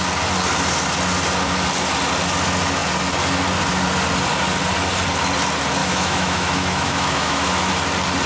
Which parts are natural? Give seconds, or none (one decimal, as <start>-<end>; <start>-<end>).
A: 0.0-5.8; 7.7-8.3